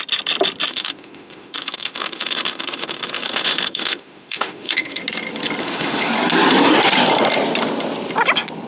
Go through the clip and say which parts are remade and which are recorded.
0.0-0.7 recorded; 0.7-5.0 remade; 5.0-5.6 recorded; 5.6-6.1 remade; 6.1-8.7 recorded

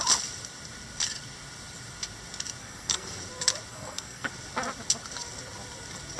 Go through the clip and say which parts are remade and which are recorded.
0.0-2.6 recorded; 2.6-3.2 remade; 3.2-3.7 recorded; 3.7-4.3 remade; 4.3-6.2 recorded